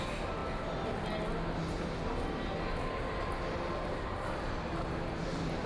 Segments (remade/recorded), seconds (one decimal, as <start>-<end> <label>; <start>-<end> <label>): 0.0-5.7 recorded